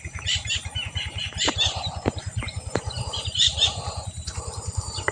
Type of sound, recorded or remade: remade